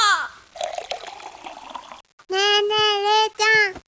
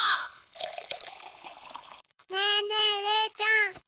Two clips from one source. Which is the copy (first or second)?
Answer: second